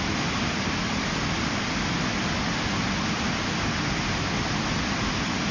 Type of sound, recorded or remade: recorded